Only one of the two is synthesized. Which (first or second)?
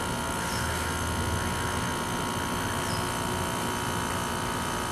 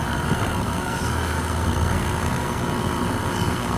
second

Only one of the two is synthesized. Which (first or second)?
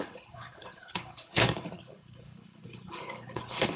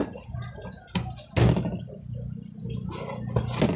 first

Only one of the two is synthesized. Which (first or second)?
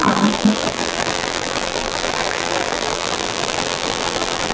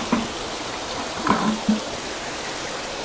first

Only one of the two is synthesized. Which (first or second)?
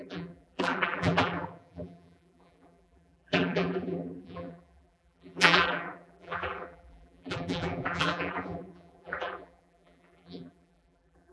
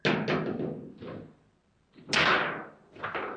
first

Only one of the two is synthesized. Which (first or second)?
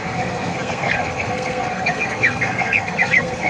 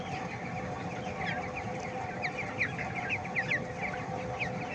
first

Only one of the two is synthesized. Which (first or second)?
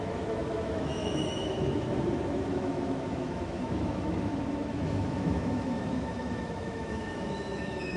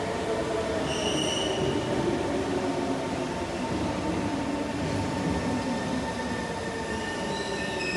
first